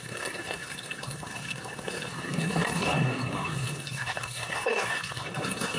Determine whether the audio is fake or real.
fake